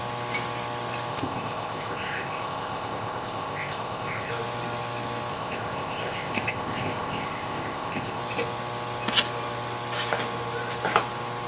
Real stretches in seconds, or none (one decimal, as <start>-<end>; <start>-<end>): 0.0-1.1; 4.3-5.3; 8.2-11.5

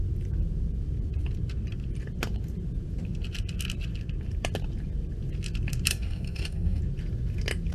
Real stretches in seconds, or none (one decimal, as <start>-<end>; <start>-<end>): 0.0-5.9; 6.8-7.7

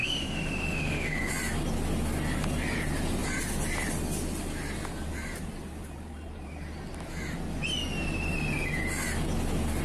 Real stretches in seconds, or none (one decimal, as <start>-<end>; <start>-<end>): 1.3-9.8

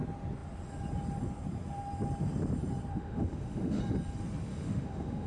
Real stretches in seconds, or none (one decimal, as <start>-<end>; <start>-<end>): 0.0-2.9; 3.8-4.5

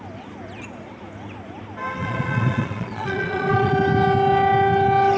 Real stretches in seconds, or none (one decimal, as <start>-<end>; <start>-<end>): 0.0-2.0; 3.7-5.2

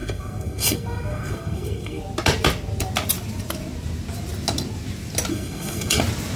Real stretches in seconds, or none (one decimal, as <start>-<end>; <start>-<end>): 2.0-5.3; 6.0-6.4

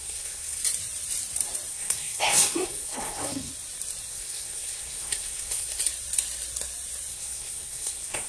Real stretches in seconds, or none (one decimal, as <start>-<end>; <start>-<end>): 0.6-1.7; 3.5-4.1; 5.8-7.1